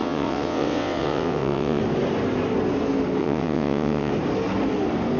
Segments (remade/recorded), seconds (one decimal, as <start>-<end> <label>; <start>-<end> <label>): 0.0-1.8 remade; 1.8-3.2 recorded; 3.2-4.1 remade; 4.1-5.2 recorded